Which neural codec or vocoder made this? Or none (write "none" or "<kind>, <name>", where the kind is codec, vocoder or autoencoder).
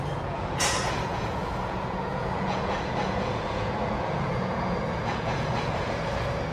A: vocoder, Vocos